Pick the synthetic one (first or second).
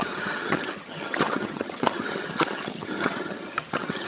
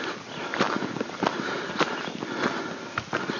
first